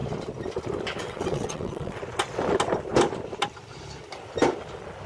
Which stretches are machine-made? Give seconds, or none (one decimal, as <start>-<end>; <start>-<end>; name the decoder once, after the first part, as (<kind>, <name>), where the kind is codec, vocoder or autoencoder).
1.0-2.0 (vocoder, WaveNeXt)